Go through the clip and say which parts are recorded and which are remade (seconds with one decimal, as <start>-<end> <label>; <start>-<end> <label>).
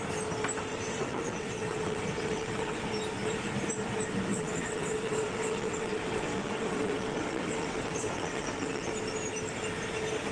0.0-0.7 recorded; 0.7-2.8 remade; 2.8-4.3 recorded; 4.3-8.9 remade; 8.9-10.3 recorded